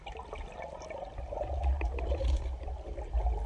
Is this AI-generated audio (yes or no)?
no